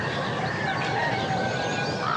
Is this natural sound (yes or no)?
yes